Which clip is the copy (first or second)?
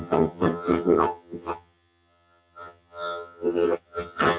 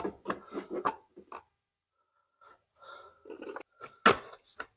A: first